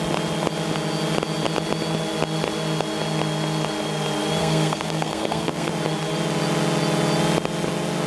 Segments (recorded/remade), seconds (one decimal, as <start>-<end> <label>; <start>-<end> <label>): 0.0-4.4 recorded; 4.4-5.7 remade; 5.7-8.1 recorded